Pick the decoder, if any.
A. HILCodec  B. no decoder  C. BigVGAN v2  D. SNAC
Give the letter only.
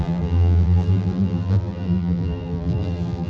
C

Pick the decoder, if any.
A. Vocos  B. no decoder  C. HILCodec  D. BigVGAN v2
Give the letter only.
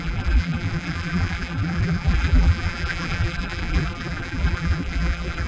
D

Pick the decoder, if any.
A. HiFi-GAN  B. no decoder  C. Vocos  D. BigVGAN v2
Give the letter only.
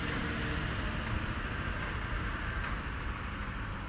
B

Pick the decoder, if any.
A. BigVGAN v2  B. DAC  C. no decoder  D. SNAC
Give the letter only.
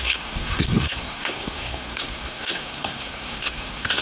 D